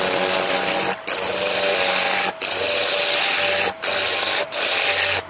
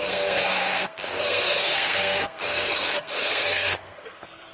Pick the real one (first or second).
first